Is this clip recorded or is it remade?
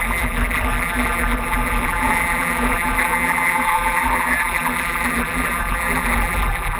remade